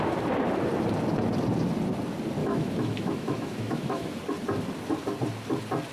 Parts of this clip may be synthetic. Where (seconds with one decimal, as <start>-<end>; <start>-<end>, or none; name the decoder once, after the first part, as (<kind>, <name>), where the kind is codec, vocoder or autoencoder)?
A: 2.4-4.2 (autoencoder, DAC-VAE)